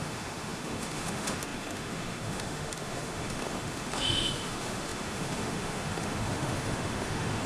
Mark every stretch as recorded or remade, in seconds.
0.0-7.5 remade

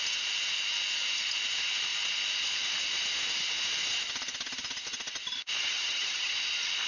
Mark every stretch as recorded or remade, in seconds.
0.0-5.6 recorded; 5.6-6.3 remade; 6.3-6.9 recorded